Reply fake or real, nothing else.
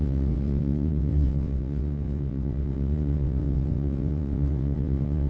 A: fake